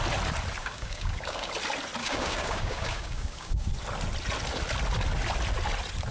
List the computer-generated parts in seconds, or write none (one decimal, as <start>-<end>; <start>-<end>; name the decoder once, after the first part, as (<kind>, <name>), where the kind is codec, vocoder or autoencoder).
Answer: 0.6-1.5 (codec, DAC); 2.0-3.7